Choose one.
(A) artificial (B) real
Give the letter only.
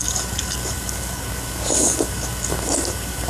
A